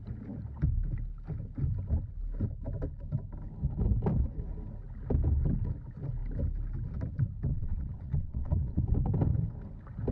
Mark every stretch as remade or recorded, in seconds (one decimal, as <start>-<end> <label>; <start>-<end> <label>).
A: 0.0-7.5 recorded; 7.5-8.8 remade; 8.8-10.1 recorded